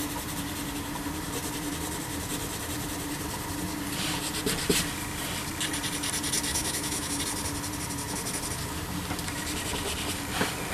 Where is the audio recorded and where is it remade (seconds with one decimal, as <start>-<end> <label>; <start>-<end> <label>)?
0.0-6.5 recorded; 6.5-7.2 remade; 7.2-10.7 recorded